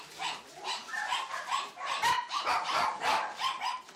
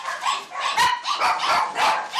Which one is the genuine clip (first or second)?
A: second